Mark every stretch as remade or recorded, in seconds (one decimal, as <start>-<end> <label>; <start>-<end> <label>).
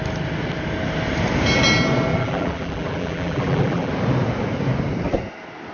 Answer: 0.0-2.1 recorded; 2.1-3.9 remade; 3.9-5.7 recorded